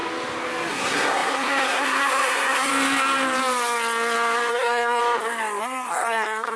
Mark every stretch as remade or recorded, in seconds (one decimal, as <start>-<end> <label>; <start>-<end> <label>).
0.0-0.7 recorded; 0.7-2.7 remade; 2.7-4.5 recorded; 4.5-5.0 remade; 5.0-5.6 recorded; 5.6-6.6 remade